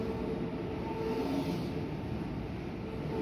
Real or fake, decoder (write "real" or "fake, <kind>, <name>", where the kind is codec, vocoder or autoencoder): real